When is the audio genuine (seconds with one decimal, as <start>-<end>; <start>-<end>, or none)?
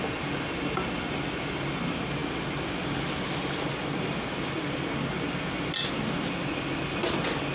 0.0-7.5